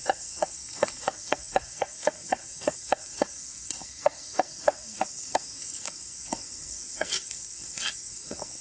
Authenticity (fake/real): fake